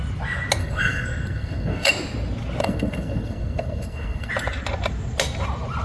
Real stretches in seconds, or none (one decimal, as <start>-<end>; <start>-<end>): 0.0-0.6; 1.9-2.6; 4.3-5.8